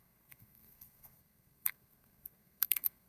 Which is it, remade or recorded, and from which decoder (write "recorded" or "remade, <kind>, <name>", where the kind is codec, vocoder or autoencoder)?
remade, codec, SNAC